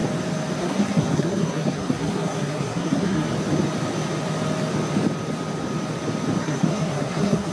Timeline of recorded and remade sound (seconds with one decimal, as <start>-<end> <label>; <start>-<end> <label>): 0.0-0.6 recorded; 0.6-3.3 remade; 3.3-6.4 recorded; 6.4-7.5 remade